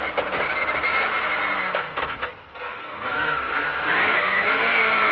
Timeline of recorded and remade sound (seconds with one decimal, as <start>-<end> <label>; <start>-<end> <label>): 0.0-1.6 recorded; 1.6-5.1 remade